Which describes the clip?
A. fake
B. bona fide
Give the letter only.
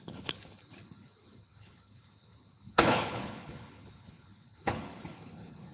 A